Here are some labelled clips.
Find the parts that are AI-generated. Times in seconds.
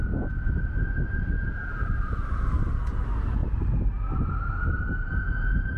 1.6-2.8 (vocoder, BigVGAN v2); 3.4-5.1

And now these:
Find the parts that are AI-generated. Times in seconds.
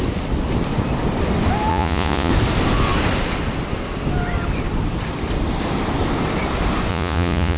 1.7-2.3 (vocoder, Vocos); 6.9-7.6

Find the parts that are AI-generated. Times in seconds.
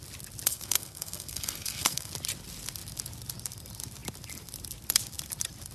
0.5-2.1 (codec, SNAC)